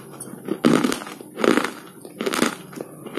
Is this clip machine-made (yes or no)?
no